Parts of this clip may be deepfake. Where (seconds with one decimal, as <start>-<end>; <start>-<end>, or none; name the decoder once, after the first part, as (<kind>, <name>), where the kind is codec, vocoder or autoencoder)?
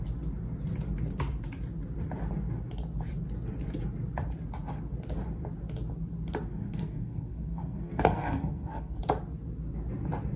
6.5-9.0 (codec, SNAC)